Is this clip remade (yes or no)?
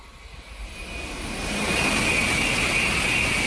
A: no